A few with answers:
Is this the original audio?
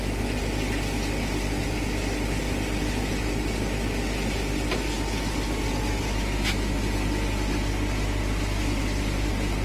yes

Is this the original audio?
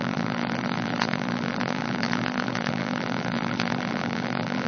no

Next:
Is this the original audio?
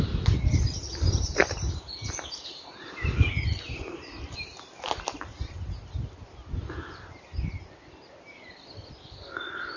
yes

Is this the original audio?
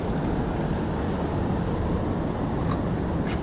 yes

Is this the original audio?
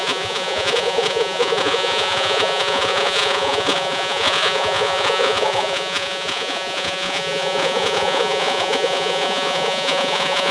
no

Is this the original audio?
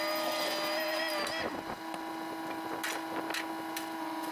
yes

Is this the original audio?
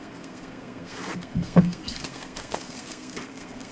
no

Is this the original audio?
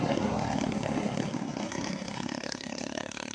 no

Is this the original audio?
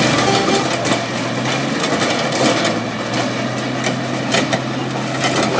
yes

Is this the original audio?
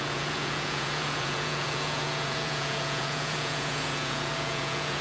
no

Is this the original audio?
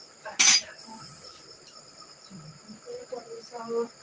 yes